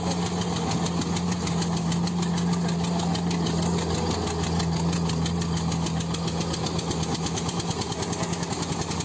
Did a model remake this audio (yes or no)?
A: no